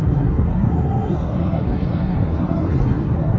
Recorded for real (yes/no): no